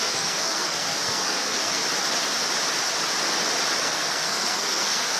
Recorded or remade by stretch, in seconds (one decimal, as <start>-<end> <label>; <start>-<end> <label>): 0.0-1.8 remade; 1.8-3.8 recorded; 3.8-5.2 remade